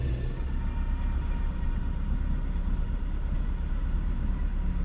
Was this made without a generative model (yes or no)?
yes